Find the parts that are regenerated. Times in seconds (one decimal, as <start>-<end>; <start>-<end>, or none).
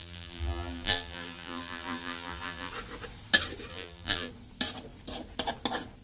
0.0-2.7; 3.7-4.3